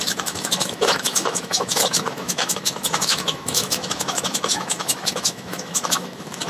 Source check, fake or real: fake